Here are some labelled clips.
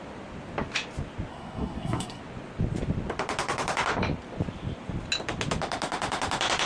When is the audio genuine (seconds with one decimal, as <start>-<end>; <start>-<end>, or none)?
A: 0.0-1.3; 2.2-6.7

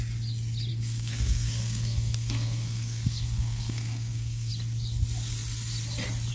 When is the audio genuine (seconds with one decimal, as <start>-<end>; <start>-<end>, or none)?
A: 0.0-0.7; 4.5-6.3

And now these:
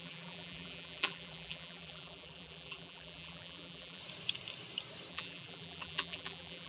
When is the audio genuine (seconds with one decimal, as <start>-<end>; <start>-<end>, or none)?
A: 4.0-5.1

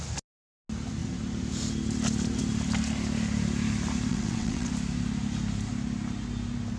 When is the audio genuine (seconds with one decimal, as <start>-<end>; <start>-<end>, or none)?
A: 0.0-4.1; 4.7-6.8